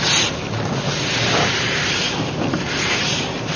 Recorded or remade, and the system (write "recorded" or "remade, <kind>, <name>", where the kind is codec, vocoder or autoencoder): recorded